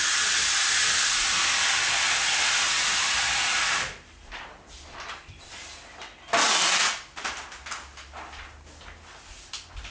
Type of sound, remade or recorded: recorded